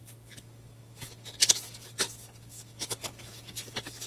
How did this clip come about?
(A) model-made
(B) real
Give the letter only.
A